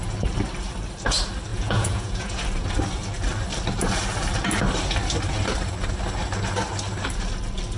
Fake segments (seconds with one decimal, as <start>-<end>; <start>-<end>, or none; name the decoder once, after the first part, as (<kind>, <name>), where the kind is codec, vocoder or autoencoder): 1.5-2.4 (vocoder, Vocos)